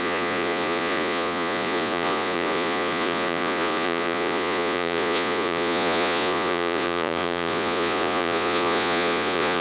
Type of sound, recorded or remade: remade